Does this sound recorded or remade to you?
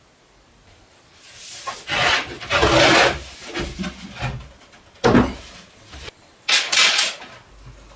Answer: recorded